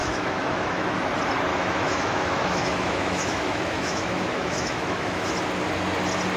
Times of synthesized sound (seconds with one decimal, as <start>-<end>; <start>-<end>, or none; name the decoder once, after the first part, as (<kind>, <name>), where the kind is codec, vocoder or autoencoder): 0.0-1.0 (autoencoder, DAC-VAE); 1.5-5.3